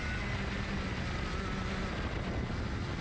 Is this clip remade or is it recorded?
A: recorded